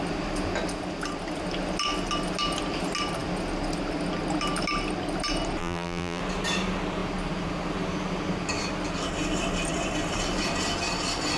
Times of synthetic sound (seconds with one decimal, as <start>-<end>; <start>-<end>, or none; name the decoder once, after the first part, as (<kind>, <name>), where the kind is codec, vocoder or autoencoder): 5.6-6.2 (vocoder, BigVGAN v2)